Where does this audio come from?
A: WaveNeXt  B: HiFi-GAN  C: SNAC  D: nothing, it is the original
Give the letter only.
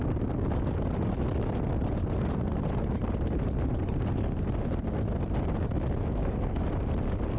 D